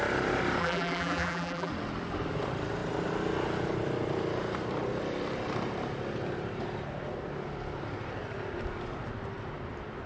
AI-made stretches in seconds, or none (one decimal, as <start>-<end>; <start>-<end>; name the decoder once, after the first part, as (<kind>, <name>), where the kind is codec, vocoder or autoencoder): 0.6-1.7 (vocoder, BigVGAN v2)